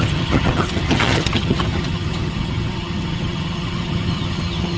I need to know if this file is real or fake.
fake